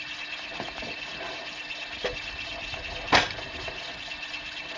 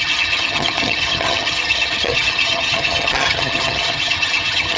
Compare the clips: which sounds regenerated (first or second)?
second